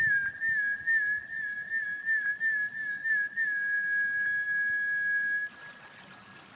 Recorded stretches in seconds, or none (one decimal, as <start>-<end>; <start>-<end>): 0.0-6.6

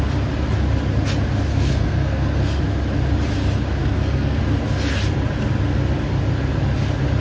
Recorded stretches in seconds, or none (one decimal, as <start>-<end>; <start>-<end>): 0.0-1.5; 2.6-3.8; 4.4-7.2